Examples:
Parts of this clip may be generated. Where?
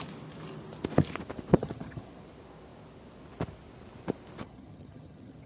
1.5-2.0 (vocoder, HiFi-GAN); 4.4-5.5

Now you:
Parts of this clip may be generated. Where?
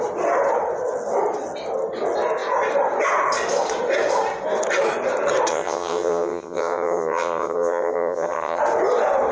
5.5-8.6 (vocoder, HiFi-GAN)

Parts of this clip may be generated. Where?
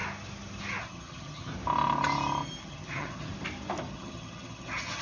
0.8-1.5 (vocoder, HiFi-GAN); 2.6-3.3; 3.9-5.0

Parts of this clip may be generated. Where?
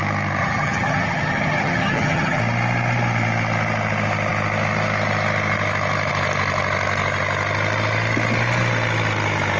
0.4-2.4 (vocoder, HiFi-GAN)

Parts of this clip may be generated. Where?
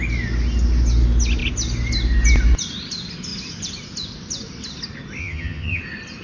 5.2-5.8 (vocoder, HiFi-GAN)